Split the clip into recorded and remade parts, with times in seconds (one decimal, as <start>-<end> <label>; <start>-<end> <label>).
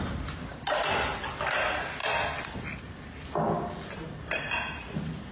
0.0-5.3 recorded